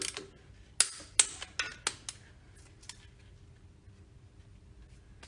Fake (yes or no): no